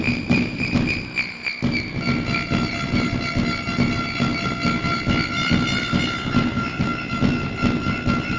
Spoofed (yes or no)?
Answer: no